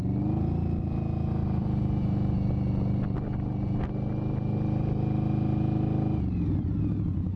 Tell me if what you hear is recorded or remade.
recorded